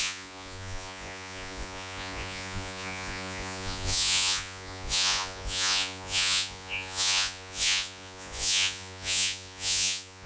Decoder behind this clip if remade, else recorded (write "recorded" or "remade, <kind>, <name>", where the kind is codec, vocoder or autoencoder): remade, vocoder, Vocos